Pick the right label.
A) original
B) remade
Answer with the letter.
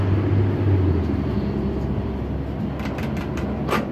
A